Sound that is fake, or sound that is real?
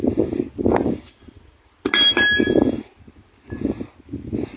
real